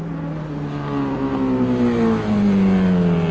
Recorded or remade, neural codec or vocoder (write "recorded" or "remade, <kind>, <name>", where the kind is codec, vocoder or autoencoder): recorded